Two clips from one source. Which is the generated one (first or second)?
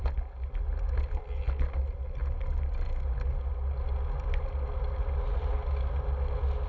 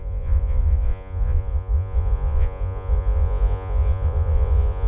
second